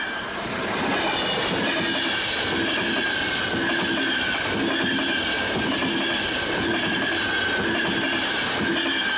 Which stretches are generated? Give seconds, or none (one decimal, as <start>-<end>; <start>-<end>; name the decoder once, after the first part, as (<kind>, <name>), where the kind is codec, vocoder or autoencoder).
none

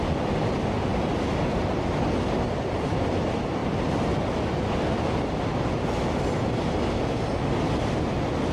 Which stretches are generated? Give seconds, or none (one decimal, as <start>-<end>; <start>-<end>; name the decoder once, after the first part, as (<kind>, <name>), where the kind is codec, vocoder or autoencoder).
none

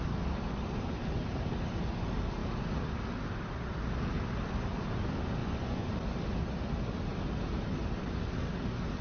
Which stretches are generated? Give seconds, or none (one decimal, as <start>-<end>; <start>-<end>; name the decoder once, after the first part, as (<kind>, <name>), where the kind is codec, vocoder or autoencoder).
5.4-5.9 (vocoder, Vocos)

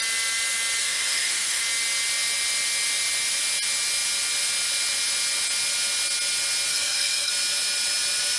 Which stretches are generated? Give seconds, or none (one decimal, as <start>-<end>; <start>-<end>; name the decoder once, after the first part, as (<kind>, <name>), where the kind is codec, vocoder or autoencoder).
0.8-1.6 (codec, SNAC); 6.7-7.3

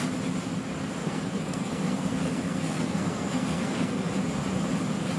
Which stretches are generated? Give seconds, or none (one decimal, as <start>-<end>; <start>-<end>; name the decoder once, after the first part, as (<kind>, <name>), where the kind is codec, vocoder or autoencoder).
1.0-4.1 (codec, SNAC)

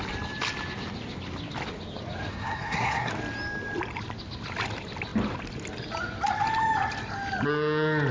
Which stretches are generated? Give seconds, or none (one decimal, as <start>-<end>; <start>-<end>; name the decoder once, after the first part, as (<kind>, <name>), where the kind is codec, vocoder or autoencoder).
2.3-3.1 (codec, SNAC)

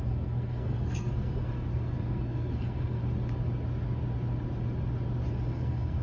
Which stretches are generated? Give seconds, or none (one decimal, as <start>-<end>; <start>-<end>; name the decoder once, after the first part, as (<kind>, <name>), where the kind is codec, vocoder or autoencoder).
0.0-3.0 (codec, SNAC); 5.5-6.0

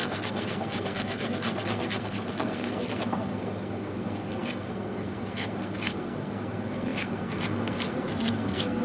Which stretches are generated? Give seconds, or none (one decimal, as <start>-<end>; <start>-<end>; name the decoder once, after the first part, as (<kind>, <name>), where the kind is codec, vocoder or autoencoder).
0.0-8.8 (codec, SNAC)